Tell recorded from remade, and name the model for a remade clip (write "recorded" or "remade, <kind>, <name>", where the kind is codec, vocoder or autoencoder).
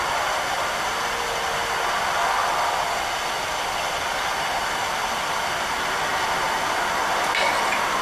recorded